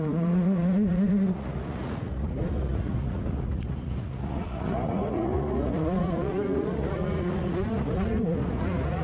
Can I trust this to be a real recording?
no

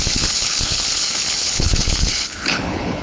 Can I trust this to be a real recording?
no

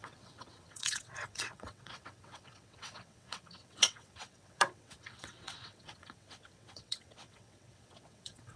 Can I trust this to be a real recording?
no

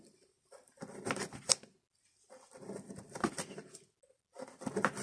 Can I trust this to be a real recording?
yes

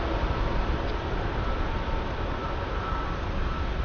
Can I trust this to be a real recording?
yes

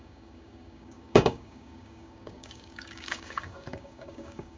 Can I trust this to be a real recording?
no